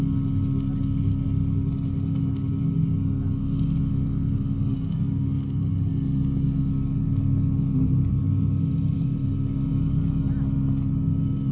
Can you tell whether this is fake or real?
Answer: real